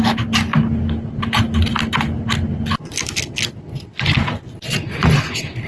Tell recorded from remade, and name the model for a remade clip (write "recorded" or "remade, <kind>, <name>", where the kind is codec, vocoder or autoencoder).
recorded